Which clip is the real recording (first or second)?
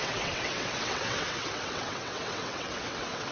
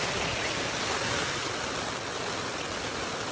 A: second